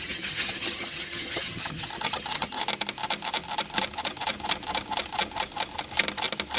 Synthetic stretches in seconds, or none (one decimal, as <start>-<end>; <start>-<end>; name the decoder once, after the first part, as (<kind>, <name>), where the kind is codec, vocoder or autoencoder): 0.0-2.6 (vocoder, HiFi-GAN)